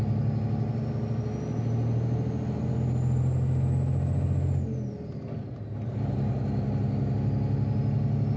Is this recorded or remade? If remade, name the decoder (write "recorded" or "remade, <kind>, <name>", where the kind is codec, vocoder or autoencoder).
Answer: recorded